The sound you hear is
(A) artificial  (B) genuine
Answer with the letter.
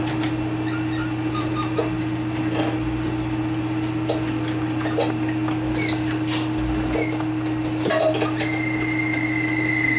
B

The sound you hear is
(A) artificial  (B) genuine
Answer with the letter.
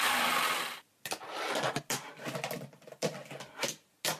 B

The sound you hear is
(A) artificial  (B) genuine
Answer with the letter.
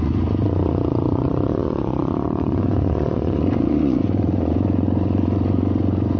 A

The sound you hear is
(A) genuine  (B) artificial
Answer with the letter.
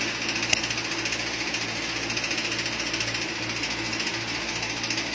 A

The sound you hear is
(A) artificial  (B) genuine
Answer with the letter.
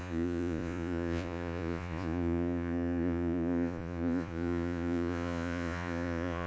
A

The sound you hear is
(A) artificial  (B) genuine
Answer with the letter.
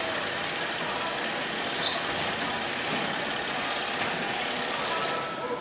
B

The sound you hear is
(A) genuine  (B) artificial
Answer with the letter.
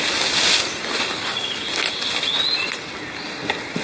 A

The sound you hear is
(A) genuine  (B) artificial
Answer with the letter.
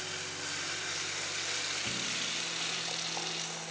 A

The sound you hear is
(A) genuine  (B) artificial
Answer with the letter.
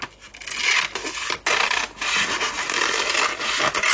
A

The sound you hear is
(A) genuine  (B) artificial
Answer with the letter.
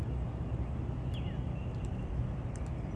A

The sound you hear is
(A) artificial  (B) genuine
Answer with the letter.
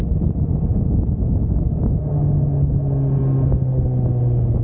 B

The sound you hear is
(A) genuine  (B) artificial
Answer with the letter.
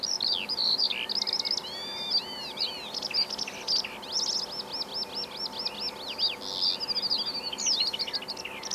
A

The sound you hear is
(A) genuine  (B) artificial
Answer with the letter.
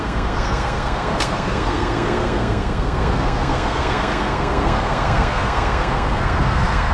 B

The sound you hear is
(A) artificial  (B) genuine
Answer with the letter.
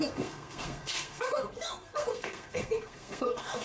A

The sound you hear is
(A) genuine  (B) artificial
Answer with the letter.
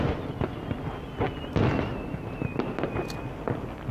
A